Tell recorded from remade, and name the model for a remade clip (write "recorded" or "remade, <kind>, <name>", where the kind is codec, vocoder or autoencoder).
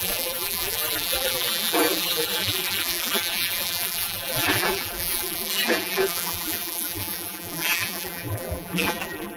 remade, vocoder, BigVGAN v2